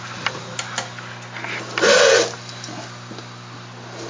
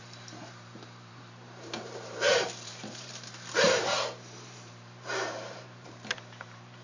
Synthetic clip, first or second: second